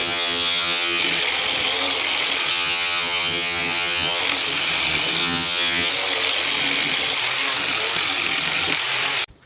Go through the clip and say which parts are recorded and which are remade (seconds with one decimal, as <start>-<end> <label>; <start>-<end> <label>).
0.0-1.0 remade; 1.0-2.5 recorded; 2.5-4.2 remade; 4.2-5.2 recorded; 5.2-5.9 remade; 5.9-9.5 recorded